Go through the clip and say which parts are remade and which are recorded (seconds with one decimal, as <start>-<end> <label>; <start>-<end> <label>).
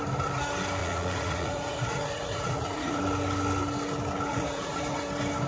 0.0-0.8 recorded; 0.8-3.0 remade; 3.0-4.3 recorded; 4.3-5.0 remade; 5.0-5.5 recorded